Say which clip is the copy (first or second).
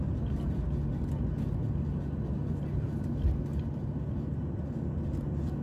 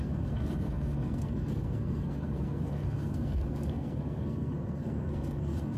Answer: second